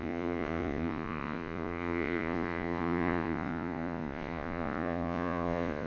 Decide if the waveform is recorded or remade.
remade